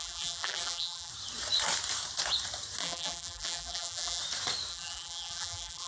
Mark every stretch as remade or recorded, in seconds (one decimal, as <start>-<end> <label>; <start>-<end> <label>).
0.0-1.1 remade; 1.1-2.8 recorded; 2.8-4.2 remade; 4.2-4.7 recorded; 4.7-5.9 remade